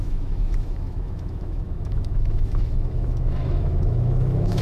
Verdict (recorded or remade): remade